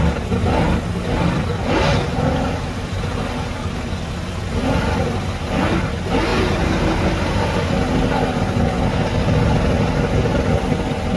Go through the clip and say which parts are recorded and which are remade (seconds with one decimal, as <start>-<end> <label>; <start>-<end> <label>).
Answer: 0.0-2.1 recorded; 2.1-3.2 remade; 3.2-6.3 recorded; 6.3-7.7 remade; 7.7-11.2 recorded